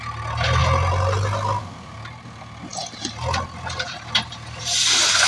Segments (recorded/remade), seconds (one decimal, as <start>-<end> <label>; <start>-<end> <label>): 0.0-5.3 recorded